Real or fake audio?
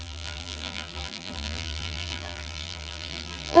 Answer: fake